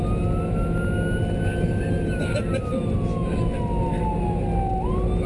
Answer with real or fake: real